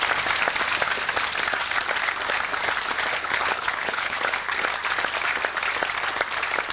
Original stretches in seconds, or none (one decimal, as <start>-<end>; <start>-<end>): 0.0-3.1; 4.2-6.7